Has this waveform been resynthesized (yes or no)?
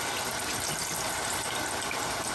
no